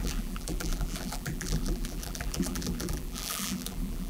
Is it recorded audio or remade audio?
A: remade